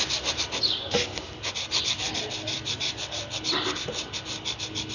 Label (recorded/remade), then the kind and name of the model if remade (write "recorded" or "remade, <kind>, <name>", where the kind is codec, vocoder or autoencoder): recorded